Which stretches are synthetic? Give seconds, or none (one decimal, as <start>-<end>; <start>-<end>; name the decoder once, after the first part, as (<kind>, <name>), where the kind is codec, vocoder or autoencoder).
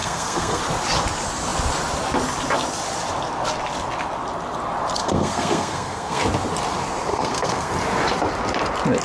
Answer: 0.0-0.6 (codec, SNAC); 5.0-6.2; 7.1-7.7